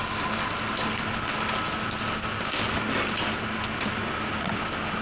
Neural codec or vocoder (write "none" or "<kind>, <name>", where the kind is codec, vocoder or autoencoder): none